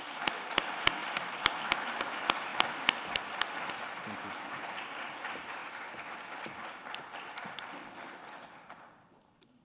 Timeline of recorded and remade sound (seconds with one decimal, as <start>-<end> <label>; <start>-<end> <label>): 0.0-1.0 recorded; 1.0-1.6 remade; 1.6-9.6 recorded